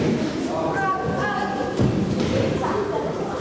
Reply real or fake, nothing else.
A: real